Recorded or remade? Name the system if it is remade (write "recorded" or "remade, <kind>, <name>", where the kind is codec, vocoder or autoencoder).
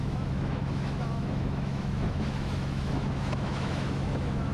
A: remade, autoencoder, DAC-VAE